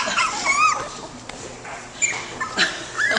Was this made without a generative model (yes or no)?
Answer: no